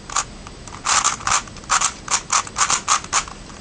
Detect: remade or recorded recorded